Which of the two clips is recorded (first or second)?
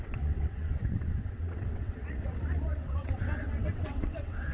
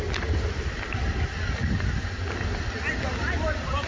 second